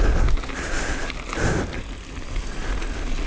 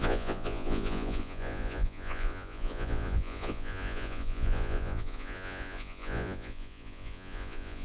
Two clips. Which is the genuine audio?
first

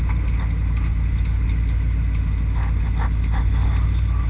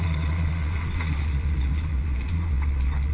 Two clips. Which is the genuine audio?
first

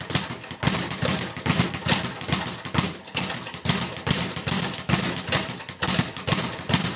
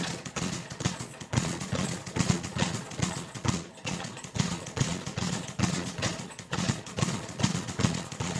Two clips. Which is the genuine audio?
first